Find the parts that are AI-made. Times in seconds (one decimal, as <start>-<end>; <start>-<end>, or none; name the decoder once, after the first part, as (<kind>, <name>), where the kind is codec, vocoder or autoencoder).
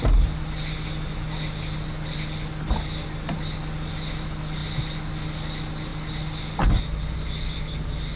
none